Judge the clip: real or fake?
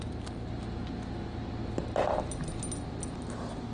real